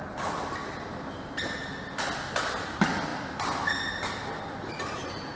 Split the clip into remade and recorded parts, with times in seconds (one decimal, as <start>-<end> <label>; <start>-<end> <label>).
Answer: 0.0-5.4 recorded